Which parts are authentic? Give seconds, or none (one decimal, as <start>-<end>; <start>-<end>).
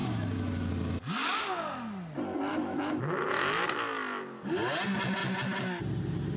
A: 0.7-2.5; 3.0-6.4